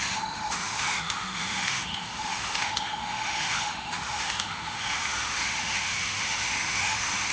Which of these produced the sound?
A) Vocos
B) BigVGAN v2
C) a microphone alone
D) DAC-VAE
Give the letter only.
D